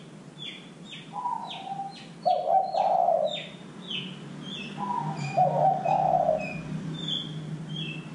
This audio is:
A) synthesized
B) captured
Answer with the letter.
B